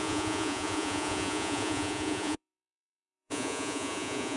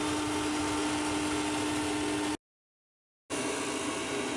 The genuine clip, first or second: second